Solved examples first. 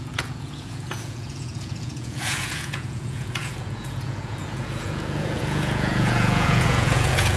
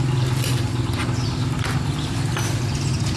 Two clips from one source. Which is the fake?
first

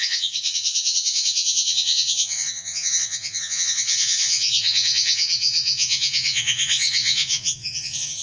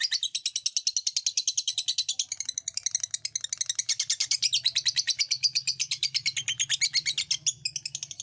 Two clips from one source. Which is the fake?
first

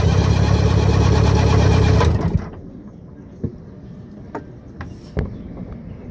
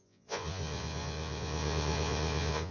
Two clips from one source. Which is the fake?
second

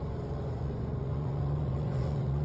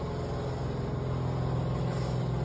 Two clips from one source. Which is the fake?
first